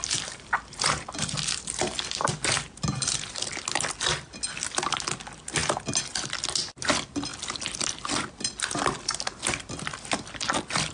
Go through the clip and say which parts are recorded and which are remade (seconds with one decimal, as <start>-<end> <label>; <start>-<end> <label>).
0.0-10.9 recorded